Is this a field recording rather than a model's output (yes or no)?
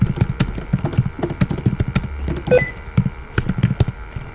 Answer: yes